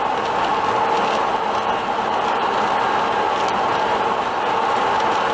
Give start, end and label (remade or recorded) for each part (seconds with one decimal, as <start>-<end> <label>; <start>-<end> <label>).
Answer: 0.0-5.3 recorded